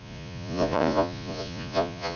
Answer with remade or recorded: remade